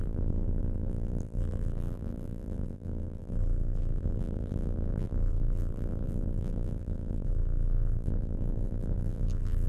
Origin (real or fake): fake